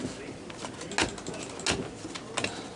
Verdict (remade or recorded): recorded